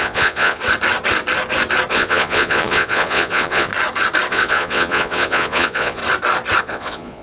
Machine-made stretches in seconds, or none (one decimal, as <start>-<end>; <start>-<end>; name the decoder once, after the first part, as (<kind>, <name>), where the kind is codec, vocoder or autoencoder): 0.0-0.6 (vocoder, Vocos); 1.9-3.7; 4.3-6.0; 6.6-7.2